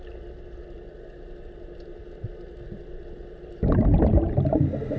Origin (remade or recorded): recorded